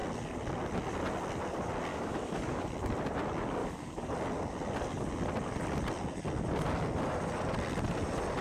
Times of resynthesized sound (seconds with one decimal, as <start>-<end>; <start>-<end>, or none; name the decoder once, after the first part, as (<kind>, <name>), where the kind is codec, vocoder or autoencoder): 1.9-2.7 (codec, DAC); 3.6-4.1